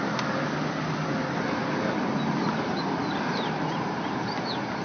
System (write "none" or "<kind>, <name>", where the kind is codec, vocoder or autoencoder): none